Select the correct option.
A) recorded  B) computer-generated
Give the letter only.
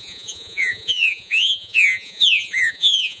B